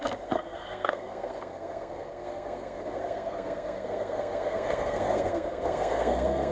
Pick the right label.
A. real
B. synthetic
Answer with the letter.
B